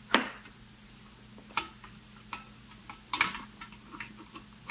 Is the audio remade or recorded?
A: recorded